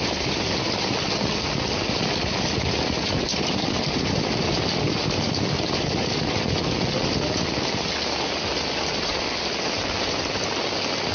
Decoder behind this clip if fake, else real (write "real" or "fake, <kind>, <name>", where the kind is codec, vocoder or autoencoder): real